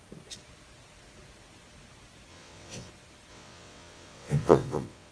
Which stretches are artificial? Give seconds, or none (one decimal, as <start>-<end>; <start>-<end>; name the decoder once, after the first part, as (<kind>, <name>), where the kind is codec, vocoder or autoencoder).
2.3-2.9 (vocoder, WaveNeXt); 3.3-5.1